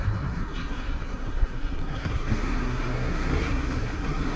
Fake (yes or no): yes